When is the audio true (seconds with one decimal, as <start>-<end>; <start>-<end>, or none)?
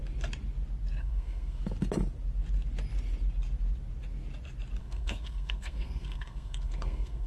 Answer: 0.0-1.0; 1.6-4.8